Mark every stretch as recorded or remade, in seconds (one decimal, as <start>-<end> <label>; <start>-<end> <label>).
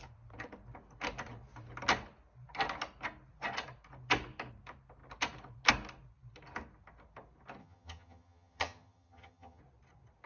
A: 0.0-7.6 recorded; 7.6-9.6 remade; 9.6-10.3 recorded